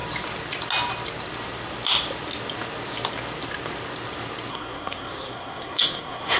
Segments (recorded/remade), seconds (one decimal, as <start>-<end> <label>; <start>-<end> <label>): 0.0-4.5 recorded; 4.5-6.4 remade